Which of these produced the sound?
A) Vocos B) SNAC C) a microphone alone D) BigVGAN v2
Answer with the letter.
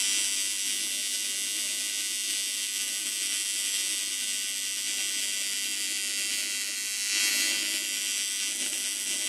C